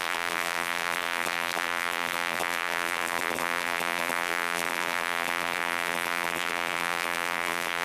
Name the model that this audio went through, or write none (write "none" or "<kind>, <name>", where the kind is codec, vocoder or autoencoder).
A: vocoder, BigVGAN v2